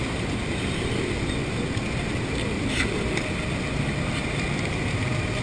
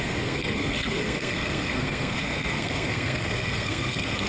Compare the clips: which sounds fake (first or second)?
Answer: second